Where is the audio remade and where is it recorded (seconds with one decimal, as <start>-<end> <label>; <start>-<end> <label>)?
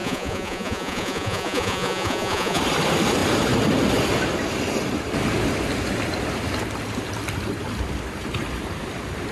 0.0-2.6 remade; 2.6-9.3 recorded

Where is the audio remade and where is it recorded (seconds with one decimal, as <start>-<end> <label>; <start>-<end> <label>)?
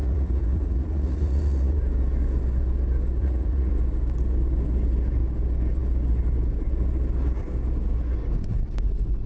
0.0-1.8 remade; 1.8-3.2 recorded; 3.2-3.7 remade; 3.7-9.3 recorded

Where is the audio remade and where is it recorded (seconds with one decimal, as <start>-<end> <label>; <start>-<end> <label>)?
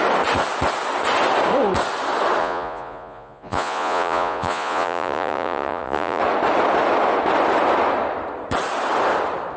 0.0-2.4 recorded; 2.4-6.2 remade; 6.2-9.6 recorded